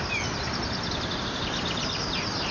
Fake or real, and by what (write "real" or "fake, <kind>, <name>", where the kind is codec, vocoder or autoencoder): real